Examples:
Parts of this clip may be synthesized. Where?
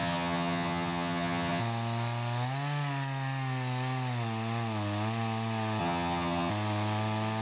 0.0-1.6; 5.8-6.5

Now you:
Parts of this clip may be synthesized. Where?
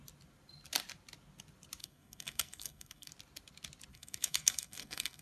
1.8-3.1; 3.9-5.2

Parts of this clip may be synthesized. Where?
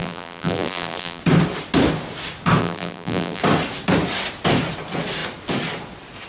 0.0-1.2; 2.6-3.4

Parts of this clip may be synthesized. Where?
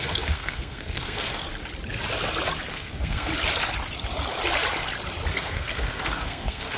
0.0-1.4; 2.7-3.3; 5.4-6.8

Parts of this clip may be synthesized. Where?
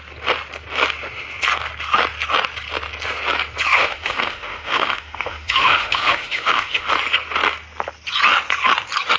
3.8-6.9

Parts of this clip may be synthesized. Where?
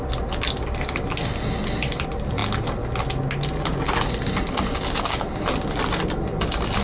none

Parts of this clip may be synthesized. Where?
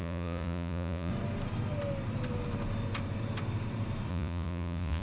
0.0-1.1; 4.1-5.0